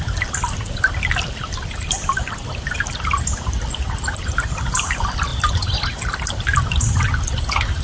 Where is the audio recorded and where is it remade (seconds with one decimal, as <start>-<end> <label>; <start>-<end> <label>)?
0.0-7.8 recorded